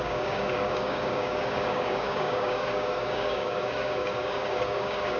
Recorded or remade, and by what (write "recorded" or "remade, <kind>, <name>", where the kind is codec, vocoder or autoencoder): remade, codec, DAC